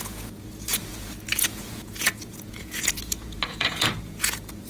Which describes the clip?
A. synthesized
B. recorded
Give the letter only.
A